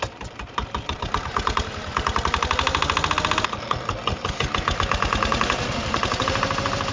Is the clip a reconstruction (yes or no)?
no